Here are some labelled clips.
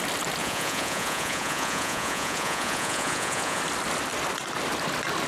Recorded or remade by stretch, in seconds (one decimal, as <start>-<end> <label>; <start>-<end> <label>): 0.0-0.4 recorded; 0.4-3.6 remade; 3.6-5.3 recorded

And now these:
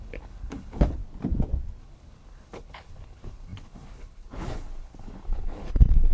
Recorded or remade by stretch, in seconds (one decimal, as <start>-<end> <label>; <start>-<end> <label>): 0.0-1.0 remade; 1.0-1.8 recorded; 1.8-6.1 remade

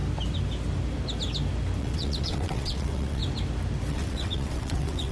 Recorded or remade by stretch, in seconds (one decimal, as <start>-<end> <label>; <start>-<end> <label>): 0.0-1.8 recorded; 1.8-3.2 remade; 3.2-3.9 recorded; 3.9-5.1 remade

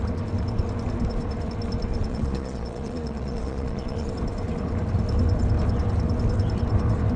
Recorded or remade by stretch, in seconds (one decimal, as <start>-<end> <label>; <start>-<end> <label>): 0.0-1.9 recorded; 1.9-4.1 remade; 4.1-7.2 recorded

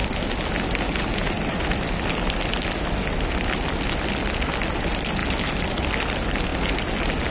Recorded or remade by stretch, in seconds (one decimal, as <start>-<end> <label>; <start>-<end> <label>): 0.0-7.3 recorded